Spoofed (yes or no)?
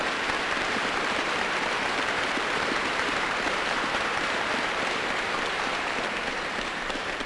yes